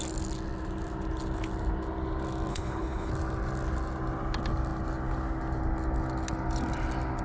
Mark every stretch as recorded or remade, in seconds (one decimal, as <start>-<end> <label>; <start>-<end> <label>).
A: 0.0-2.5 recorded; 2.5-3.1 remade; 3.1-7.2 recorded